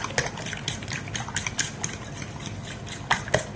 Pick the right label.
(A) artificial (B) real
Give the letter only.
B